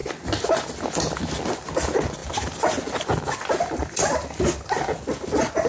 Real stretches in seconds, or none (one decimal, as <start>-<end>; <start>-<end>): 0.0-2.2; 3.3-5.7